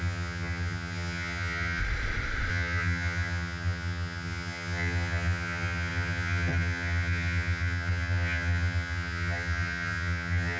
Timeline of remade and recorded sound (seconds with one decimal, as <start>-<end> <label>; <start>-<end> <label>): 0.0-1.8 remade; 1.8-2.5 recorded; 2.5-10.6 remade